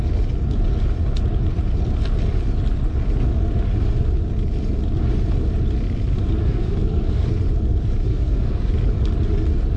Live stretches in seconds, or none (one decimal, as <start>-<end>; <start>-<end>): 0.0-6.4; 7.3-8.1; 8.7-9.8